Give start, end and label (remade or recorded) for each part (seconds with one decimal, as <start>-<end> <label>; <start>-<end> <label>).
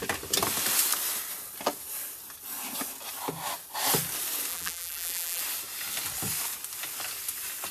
0.0-4.5 recorded; 4.5-5.4 remade; 5.4-7.7 recorded